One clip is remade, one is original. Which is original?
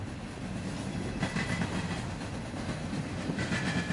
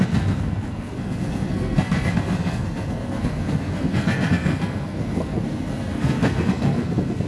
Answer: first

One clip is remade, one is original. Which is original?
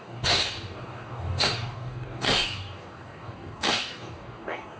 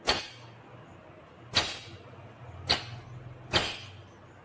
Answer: second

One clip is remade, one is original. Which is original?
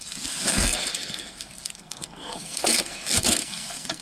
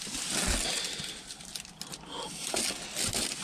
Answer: second